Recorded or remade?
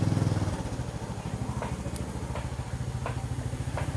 recorded